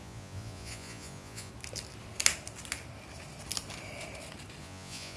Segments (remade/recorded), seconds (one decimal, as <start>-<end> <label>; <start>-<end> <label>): 0.0-1.5 remade; 1.5-4.6 recorded; 4.6-5.2 remade